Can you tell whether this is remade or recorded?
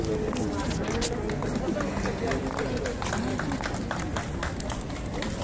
recorded